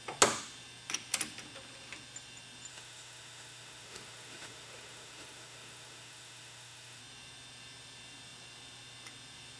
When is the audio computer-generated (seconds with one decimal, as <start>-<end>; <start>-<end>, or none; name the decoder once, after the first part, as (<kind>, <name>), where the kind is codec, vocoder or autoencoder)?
2.7-7.0 (autoencoder, DAC-VAE)